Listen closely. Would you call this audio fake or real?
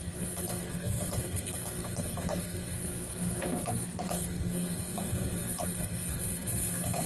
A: fake